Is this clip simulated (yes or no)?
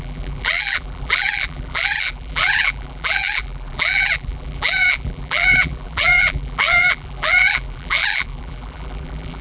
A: yes